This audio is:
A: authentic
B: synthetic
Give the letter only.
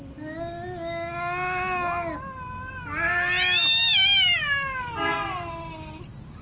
A